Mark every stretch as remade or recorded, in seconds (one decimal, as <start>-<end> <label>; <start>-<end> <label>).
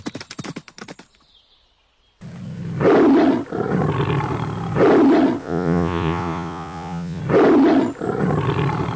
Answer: 0.0-5.4 recorded; 5.4-7.2 remade; 7.2-9.0 recorded